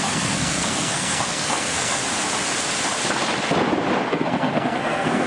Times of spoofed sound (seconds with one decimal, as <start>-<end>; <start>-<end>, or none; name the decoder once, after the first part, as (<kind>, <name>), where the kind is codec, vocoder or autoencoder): 0.0-2.0 (codec, SNAC); 4.1-5.3